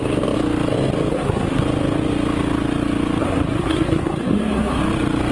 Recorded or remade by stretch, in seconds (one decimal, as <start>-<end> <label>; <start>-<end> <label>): 0.0-1.1 recorded; 1.1-1.6 remade; 1.6-3.2 recorded; 3.2-4.8 remade; 4.8-5.3 recorded